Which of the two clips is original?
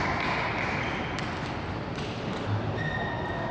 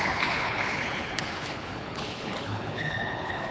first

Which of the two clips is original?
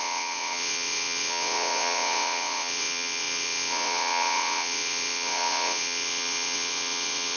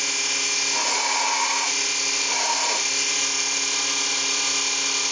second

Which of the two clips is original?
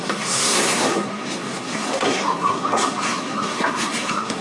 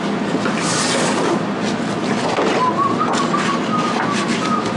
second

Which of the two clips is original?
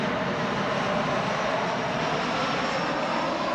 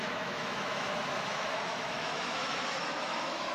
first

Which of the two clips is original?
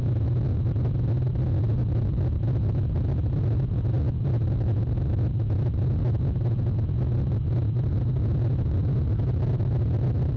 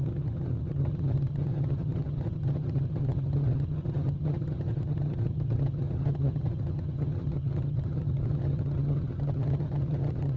first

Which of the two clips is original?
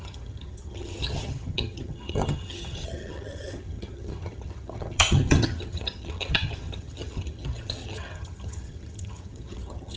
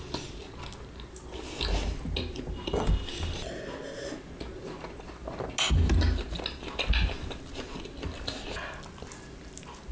second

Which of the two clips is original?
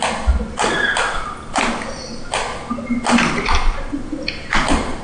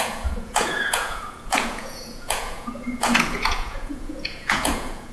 first